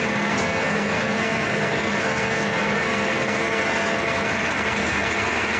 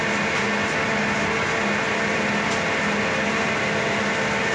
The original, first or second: second